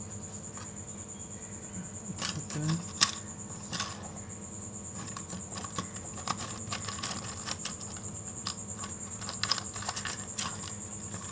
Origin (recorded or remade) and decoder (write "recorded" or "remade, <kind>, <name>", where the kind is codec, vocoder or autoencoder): recorded